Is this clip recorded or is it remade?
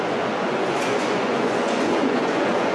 remade